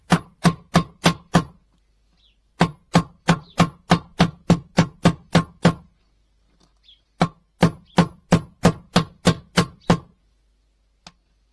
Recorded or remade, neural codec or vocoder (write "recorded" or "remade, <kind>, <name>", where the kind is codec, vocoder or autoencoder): recorded